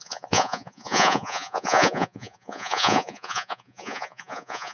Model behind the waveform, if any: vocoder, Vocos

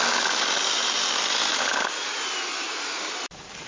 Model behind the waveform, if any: none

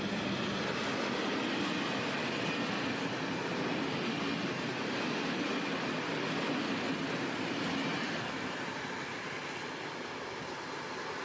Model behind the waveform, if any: none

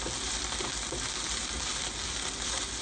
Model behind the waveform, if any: none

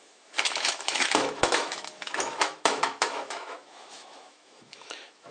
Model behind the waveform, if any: autoencoder, DAC-VAE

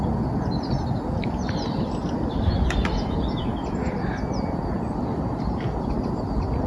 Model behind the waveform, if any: none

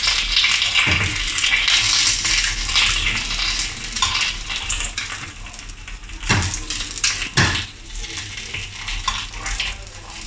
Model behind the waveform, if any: none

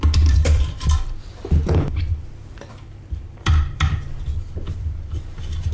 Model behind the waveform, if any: vocoder, BigVGAN v2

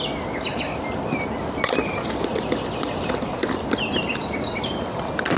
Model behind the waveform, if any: none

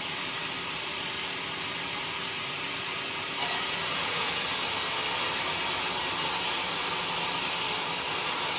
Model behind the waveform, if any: none